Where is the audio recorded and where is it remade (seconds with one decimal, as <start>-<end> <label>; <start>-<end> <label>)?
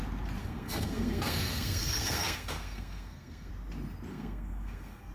0.0-0.4 recorded; 0.4-3.5 remade; 3.5-4.1 recorded; 4.1-5.1 remade